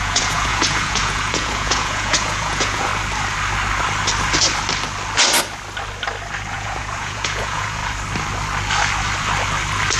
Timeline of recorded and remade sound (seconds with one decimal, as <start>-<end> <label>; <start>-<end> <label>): 0.0-2.9 remade; 2.9-6.5 recorded; 6.5-7.8 remade; 7.8-10.0 recorded